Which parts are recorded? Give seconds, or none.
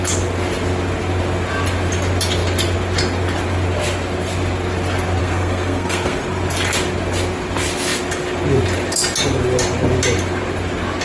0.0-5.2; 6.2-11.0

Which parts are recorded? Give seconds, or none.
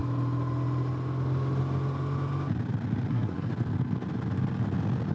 0.0-3.1; 3.5-5.1